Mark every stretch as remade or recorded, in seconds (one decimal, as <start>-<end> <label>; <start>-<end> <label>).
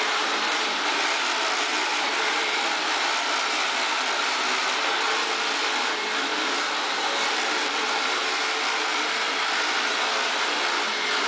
0.0-1.9 recorded; 1.9-3.2 remade; 3.2-8.9 recorded; 8.9-10.4 remade; 10.4-11.3 recorded